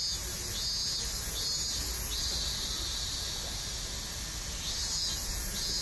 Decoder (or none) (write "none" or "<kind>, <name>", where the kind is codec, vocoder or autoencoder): none